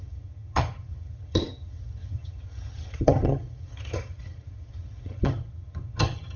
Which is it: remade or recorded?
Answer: remade